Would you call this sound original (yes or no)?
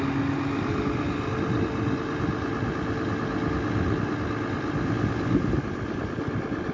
yes